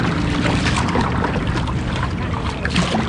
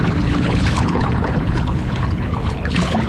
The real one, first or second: first